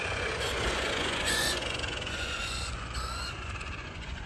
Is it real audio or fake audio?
fake